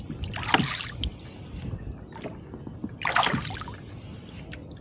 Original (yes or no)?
yes